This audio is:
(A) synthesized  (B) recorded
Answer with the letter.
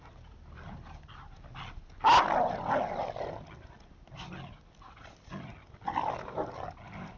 B